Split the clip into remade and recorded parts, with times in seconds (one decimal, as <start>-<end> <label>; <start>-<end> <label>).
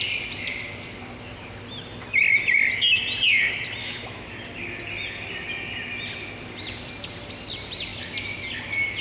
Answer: 0.0-3.8 recorded; 3.8-4.3 remade; 4.3-9.0 recorded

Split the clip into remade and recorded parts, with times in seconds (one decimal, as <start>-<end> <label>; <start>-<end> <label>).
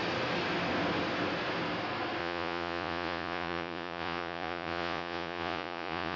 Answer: 0.0-2.2 recorded; 2.2-6.2 remade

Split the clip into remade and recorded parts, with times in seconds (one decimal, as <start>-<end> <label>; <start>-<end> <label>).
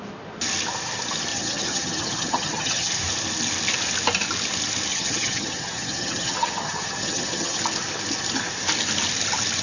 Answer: 0.0-1.3 recorded; 1.3-2.9 remade; 2.9-4.9 recorded; 4.9-7.6 remade; 7.6-9.6 recorded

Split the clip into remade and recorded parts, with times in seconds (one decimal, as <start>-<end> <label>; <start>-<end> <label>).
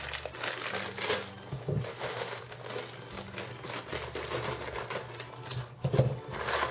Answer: 0.0-1.9 recorded; 1.9-2.4 remade; 2.4-6.7 recorded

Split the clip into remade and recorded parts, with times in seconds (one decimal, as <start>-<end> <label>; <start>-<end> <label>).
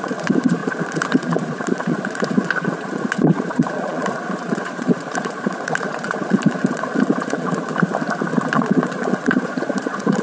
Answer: 0.0-7.7 remade; 7.7-8.3 recorded; 8.3-10.2 remade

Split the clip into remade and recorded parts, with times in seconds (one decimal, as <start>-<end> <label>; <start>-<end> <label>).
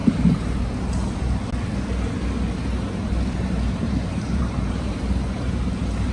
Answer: 0.0-3.7 recorded; 3.7-6.1 remade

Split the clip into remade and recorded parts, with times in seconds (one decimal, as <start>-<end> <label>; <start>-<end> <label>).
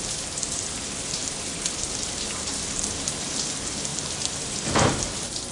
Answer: 0.0-5.5 recorded